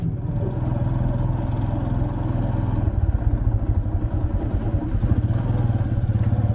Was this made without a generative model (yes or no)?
yes